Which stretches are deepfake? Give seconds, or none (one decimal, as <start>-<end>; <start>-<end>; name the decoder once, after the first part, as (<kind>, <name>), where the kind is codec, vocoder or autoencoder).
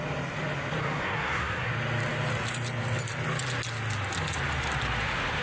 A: 0.8-1.7 (codec, SNAC)